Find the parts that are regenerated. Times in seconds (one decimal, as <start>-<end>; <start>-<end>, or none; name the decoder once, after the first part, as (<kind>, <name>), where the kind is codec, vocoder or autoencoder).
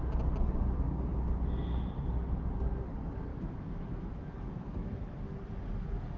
3.3-5.2 (autoencoder, DAC-VAE)